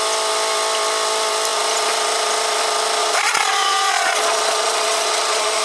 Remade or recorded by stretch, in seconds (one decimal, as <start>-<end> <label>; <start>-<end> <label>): 0.0-3.0 recorded; 3.0-5.6 remade